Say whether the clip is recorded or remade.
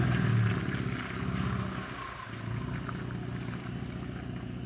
recorded